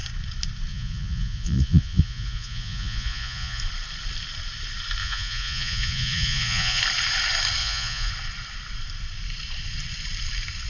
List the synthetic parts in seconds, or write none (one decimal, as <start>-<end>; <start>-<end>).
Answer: 0.7-3.6; 5.0-6.8; 7.6-8.1